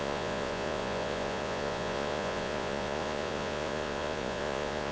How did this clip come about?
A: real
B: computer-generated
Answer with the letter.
B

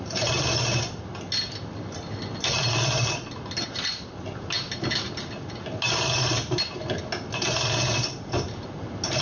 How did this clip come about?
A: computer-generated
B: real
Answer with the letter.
B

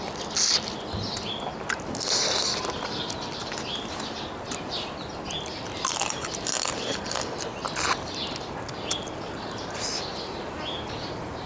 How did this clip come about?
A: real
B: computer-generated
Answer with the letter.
A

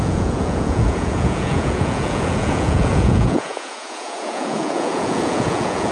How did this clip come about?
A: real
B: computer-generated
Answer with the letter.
B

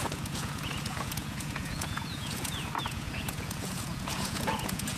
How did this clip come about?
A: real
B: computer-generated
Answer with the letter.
B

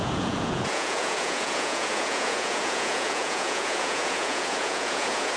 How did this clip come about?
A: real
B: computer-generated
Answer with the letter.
B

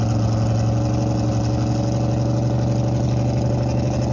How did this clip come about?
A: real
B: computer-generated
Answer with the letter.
A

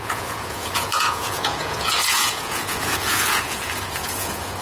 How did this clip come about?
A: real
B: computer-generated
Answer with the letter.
B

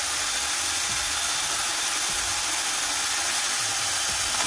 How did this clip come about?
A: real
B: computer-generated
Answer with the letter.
A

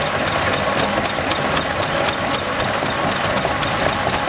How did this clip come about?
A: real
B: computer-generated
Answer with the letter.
A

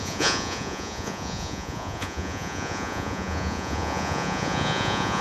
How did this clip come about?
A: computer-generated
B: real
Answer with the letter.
A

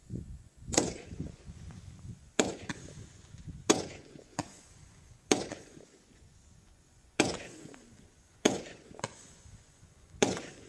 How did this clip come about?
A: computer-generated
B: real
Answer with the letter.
A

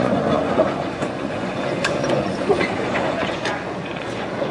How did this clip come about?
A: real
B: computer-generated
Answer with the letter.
B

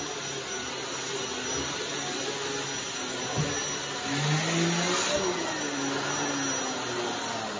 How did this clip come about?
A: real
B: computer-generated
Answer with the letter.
A